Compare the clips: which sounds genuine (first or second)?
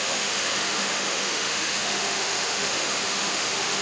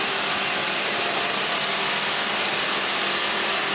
second